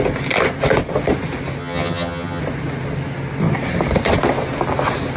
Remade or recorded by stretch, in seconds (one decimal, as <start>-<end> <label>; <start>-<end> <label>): 0.0-1.6 recorded; 1.6-2.4 remade; 2.4-5.2 recorded